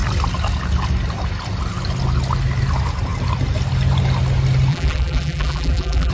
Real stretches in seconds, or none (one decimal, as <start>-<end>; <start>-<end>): 0.0-4.7